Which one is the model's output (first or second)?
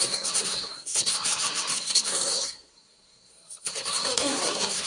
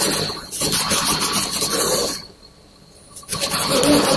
first